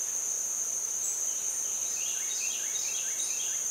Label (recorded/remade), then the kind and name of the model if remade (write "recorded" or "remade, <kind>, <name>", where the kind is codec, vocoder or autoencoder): remade, vocoder, BigVGAN v2